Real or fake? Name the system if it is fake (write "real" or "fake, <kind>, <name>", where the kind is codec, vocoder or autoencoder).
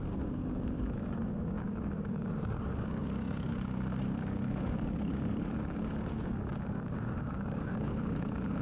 fake, codec, DAC